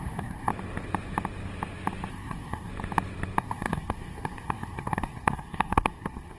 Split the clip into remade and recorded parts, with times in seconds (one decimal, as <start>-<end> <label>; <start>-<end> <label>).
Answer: 0.0-0.5 remade; 0.5-2.1 recorded; 2.1-2.7 remade; 2.7-3.4 recorded; 3.4-6.4 remade